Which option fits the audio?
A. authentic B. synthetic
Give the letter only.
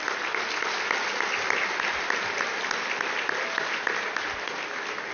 A